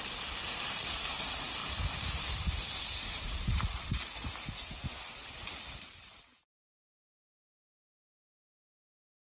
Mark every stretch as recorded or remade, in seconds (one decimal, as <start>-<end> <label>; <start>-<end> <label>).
0.0-9.3 recorded